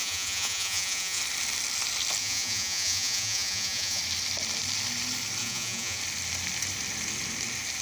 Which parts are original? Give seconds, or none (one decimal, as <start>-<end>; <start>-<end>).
1.2-2.2; 4.0-5.4; 6.0-7.8